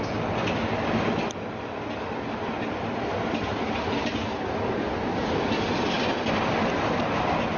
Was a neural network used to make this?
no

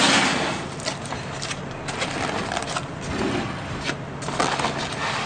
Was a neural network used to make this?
no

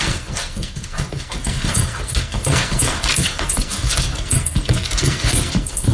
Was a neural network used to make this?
yes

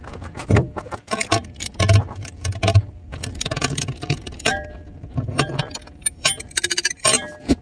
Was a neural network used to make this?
yes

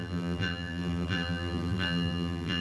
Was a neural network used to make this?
yes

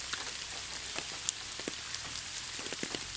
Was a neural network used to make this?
no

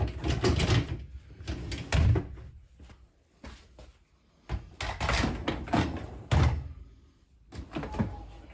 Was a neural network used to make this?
no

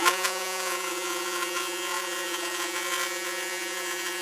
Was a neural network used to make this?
yes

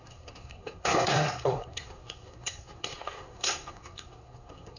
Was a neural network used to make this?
yes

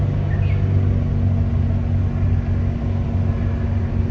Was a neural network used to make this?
no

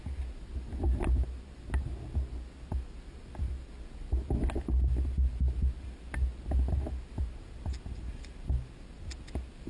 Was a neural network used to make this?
no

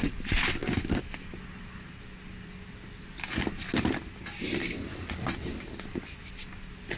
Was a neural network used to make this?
no